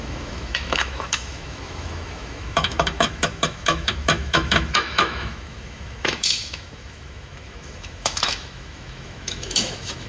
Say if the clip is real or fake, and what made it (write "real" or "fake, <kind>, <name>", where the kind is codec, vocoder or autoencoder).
fake, autoencoder, DAC-VAE